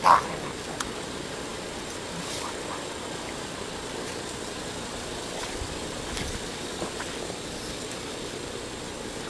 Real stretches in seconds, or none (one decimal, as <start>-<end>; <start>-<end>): 0.0-9.3